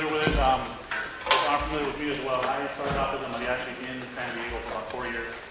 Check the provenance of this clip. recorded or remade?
recorded